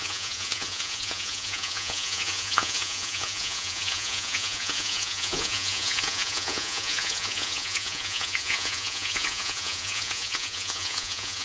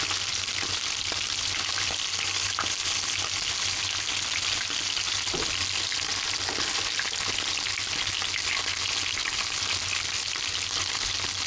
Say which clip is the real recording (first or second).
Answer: second